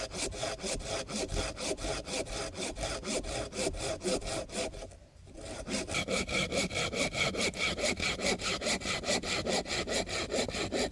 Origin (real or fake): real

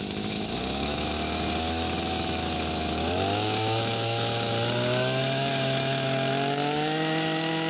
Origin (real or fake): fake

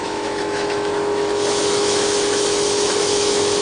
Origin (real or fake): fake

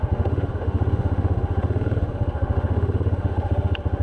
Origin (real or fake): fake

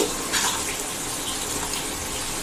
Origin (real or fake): real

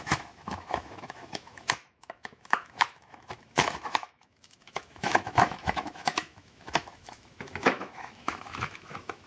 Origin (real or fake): fake